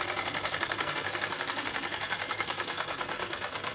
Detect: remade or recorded remade